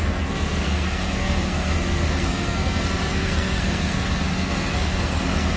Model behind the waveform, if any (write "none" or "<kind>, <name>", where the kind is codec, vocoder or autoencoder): codec, SNAC